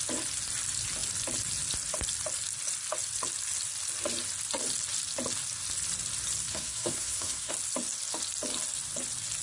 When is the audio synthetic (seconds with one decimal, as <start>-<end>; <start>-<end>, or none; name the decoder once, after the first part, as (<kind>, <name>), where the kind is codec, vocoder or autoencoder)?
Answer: 6.5-7.5 (codec, SNAC)